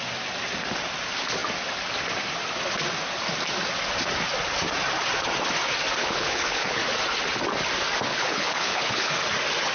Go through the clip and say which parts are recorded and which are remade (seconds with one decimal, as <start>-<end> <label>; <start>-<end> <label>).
0.0-6.0 recorded; 6.0-6.8 remade; 6.8-8.1 recorded; 8.1-9.1 remade; 9.1-9.7 recorded